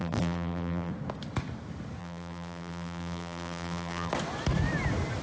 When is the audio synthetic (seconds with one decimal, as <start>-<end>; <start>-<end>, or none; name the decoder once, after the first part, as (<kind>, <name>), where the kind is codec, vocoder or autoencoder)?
0.0-0.9 (vocoder, BigVGAN v2); 2.0-4.1